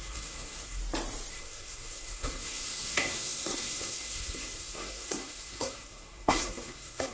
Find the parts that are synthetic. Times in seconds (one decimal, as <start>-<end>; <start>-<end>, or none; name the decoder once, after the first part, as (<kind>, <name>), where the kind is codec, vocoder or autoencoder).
0.0-0.8 (codec, SNAC); 1.3-7.1